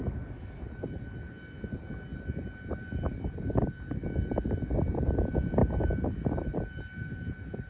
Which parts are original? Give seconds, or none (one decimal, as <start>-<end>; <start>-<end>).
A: 0.0-7.7